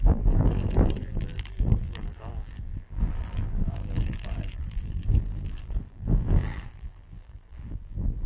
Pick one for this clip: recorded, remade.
remade